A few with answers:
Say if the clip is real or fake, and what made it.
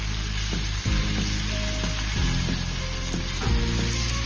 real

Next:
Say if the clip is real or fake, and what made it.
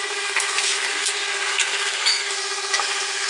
fake, codec, SNAC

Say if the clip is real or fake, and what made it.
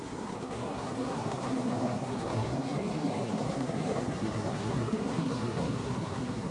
fake, codec, SNAC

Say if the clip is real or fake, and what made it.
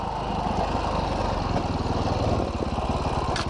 real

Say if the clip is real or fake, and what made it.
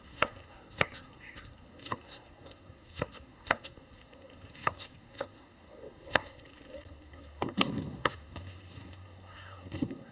fake, codec, SNAC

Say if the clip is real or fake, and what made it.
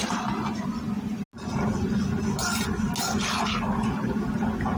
real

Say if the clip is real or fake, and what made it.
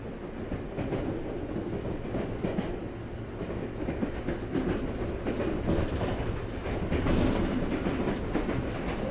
real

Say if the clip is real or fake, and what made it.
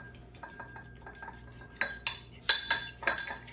real